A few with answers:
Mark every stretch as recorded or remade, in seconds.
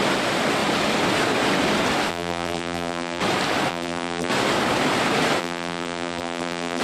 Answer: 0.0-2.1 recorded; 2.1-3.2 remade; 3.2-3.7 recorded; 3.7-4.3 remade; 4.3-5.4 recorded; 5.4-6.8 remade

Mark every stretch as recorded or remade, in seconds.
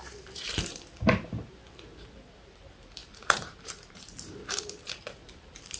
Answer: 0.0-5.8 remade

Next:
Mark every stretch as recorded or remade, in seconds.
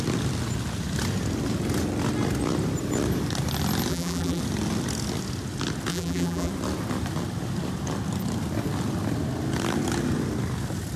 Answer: 0.0-3.9 recorded; 3.9-4.4 remade; 4.4-5.9 recorded; 5.9-6.5 remade; 6.5-11.0 recorded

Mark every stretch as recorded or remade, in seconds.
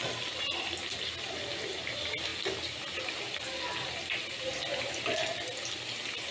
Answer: 0.0-6.3 recorded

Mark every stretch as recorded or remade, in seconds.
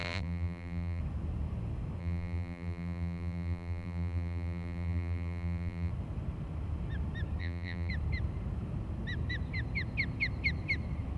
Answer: 0.0-1.0 remade; 1.0-2.0 recorded; 2.0-5.9 remade; 5.9-7.4 recorded; 7.4-7.9 remade; 7.9-11.2 recorded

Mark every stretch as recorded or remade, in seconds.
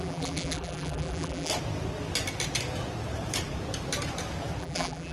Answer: 0.0-1.5 remade; 1.5-4.6 recorded; 4.6-5.1 remade